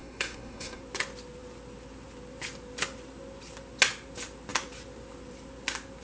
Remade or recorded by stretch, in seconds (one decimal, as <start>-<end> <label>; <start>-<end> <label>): 0.0-0.8 remade; 0.8-6.0 recorded